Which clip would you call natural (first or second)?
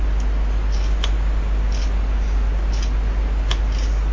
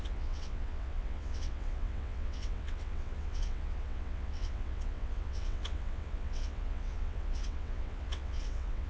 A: first